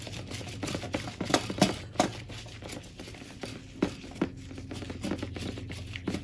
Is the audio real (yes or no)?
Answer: yes